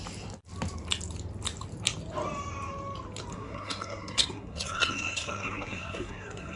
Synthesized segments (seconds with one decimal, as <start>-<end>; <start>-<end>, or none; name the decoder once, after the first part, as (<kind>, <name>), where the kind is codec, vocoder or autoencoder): 3.3-6.6 (codec, SNAC)